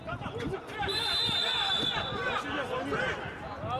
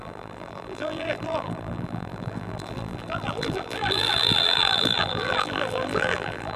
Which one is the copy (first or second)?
second